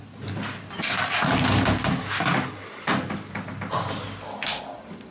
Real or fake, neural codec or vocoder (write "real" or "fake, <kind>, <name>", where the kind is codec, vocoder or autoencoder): real